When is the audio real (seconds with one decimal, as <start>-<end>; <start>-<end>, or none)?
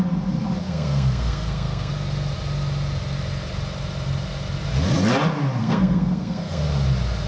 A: 0.0-0.6; 1.9-5.6; 6.6-7.3